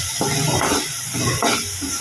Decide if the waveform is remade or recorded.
recorded